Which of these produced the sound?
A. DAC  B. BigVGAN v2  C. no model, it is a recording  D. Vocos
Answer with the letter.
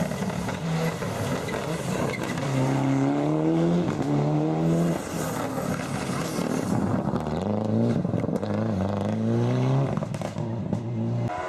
C